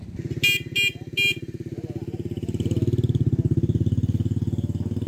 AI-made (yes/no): no